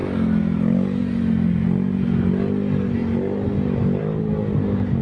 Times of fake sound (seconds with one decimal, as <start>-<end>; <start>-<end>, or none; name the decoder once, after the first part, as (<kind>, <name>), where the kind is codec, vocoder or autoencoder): none